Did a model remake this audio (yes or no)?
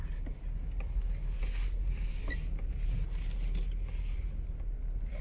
no